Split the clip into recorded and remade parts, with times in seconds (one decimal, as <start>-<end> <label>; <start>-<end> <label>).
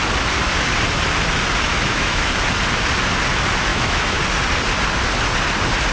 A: 0.0-1.7 recorded; 1.7-2.3 remade; 2.3-3.7 recorded; 3.7-4.2 remade; 4.2-5.9 recorded